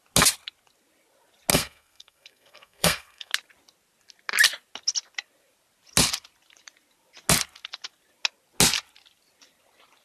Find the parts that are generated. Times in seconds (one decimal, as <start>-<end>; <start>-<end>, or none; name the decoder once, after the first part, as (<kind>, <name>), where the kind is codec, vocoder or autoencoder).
1.5-3.3 (codec, SNAC)

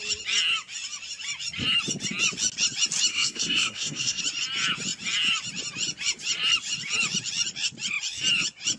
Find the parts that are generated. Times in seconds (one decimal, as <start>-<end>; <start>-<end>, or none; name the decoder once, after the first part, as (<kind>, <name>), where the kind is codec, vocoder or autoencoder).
3.1-4.2 (codec, SNAC)

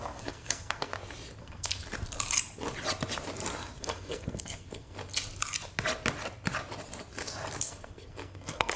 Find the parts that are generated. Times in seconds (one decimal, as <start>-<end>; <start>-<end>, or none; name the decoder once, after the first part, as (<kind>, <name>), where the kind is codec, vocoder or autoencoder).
0.0-0.9 (codec, SNAC); 1.4-1.8; 3.8-5.0; 7.6-8.8